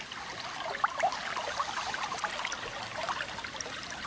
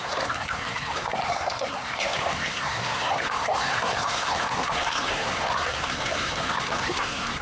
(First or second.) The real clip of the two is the first